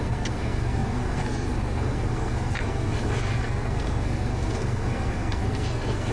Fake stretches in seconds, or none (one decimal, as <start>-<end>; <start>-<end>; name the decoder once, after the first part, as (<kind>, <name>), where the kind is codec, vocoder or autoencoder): 0.0-6.1 (codec, SNAC)